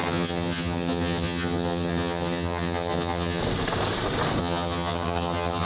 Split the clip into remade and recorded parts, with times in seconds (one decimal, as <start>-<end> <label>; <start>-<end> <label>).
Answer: 0.0-3.4 remade; 3.4-4.4 recorded; 4.4-5.7 remade